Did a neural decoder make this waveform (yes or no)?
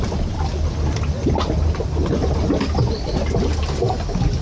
no